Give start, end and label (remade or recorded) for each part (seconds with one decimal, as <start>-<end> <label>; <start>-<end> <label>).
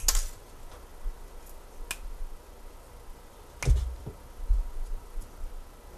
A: 0.0-6.0 recorded